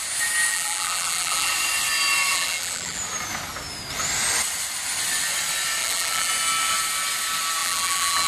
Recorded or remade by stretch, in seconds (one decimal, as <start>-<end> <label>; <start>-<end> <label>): 0.0-0.5 recorded; 0.5-1.5 remade; 1.5-2.3 recorded; 2.3-3.0 remade; 3.0-5.8 recorded; 5.8-6.3 remade; 6.3-7.6 recorded; 7.6-8.3 remade